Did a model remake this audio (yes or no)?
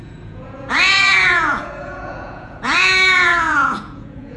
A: yes